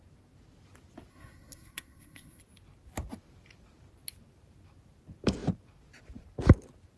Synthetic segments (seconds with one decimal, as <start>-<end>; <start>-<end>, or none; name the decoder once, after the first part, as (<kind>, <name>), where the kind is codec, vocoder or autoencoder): 1.1-2.4 (codec, SNAC)